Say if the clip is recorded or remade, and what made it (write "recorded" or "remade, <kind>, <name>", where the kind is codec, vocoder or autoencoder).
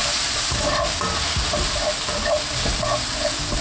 recorded